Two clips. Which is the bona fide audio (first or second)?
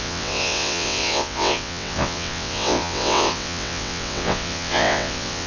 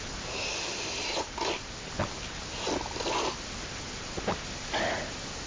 second